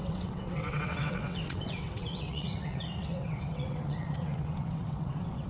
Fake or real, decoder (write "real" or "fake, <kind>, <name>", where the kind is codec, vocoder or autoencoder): fake, vocoder, WaveNeXt